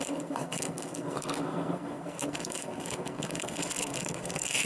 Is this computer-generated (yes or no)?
yes